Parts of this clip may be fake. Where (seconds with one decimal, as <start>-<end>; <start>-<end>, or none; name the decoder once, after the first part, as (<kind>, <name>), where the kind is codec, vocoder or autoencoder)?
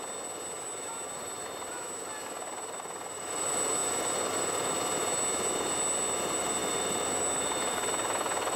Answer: none